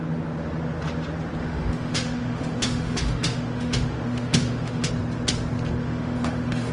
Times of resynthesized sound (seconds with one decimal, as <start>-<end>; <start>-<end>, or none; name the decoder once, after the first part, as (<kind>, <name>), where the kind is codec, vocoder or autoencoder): 1.4-4.9 (autoencoder, DAC-VAE); 5.8-6.7